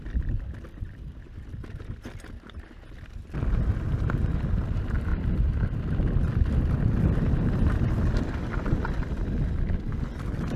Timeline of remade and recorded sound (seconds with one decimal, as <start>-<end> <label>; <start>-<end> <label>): 0.0-10.6 recorded